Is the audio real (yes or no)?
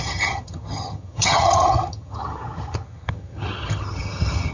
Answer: no